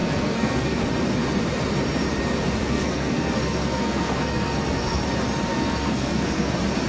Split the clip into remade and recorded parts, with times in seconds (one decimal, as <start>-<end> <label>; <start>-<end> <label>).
0.0-0.8 remade; 0.8-2.6 recorded; 2.6-5.0 remade; 5.0-5.5 recorded; 5.5-6.5 remade; 6.5-6.9 recorded